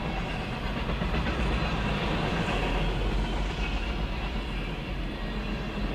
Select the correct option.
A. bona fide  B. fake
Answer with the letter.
A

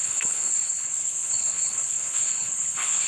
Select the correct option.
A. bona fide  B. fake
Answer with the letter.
B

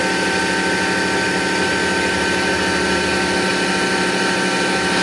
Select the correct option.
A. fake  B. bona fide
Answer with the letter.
B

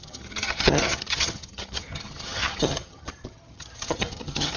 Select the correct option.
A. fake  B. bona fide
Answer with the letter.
A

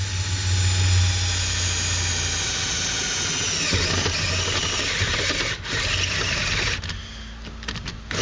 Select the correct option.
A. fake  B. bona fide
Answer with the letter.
B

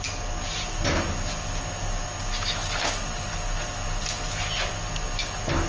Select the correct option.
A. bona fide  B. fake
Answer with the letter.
A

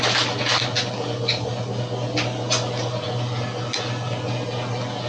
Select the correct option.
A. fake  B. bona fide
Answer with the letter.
B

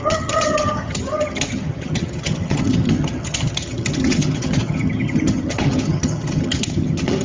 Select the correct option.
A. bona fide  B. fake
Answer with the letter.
B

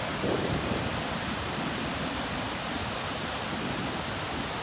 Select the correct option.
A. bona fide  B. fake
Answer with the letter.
A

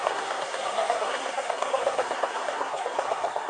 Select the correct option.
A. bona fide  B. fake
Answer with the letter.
B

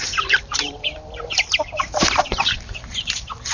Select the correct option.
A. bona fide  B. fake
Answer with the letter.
B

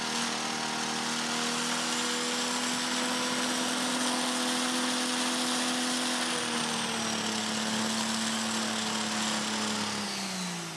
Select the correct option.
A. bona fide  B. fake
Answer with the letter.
A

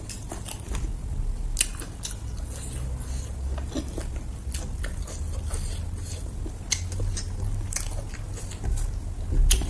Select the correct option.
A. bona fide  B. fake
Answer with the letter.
A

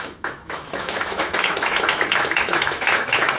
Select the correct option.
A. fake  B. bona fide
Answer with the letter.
A